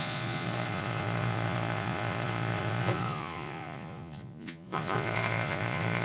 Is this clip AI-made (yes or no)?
yes